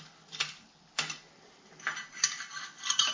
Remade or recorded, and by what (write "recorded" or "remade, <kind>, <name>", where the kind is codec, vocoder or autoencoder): recorded